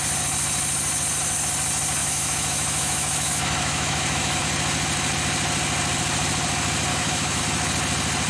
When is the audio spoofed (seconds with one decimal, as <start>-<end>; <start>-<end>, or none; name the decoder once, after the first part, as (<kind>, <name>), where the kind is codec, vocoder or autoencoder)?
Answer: 2.0-4.4 (autoencoder, DAC-VAE); 6.9-7.4